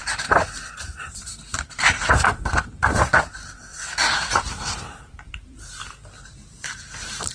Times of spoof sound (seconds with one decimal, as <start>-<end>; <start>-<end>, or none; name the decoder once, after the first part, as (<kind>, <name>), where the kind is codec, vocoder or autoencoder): 0.0-7.3 (vocoder, BigVGAN v2)